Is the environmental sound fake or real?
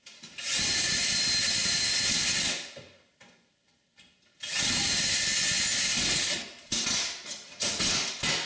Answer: real